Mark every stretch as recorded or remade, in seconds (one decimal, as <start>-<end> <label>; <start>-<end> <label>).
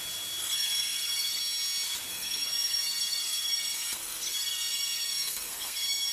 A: 0.0-0.4 recorded; 0.4-1.4 remade; 1.4-2.1 recorded; 2.1-6.1 remade